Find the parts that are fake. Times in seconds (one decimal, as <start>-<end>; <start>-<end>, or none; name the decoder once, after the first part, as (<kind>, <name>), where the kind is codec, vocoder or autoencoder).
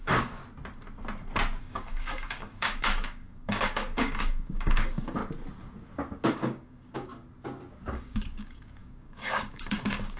0.0-0.4 (codec, DAC); 1.6-5.2; 6.3-7.1; 7.9-10.2